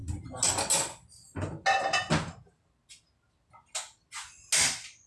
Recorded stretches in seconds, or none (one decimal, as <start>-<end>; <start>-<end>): 0.0-5.1